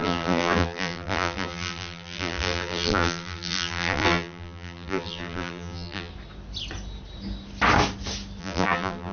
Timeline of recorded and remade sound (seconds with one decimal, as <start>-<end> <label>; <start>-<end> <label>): 0.0-6.1 remade; 6.1-8.4 recorded; 8.4-9.1 remade